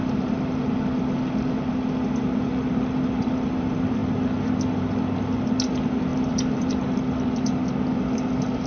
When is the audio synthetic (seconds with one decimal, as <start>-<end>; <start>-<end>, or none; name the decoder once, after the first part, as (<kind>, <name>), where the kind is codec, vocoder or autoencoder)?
0.0-1.7 (vocoder, BigVGAN v2); 6.1-6.7